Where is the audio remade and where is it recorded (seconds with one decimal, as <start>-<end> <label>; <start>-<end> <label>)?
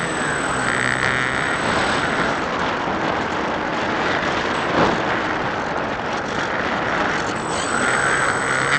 0.0-8.8 recorded